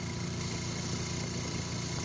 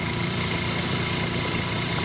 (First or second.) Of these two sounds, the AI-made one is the second